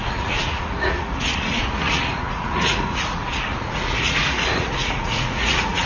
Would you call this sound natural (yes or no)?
no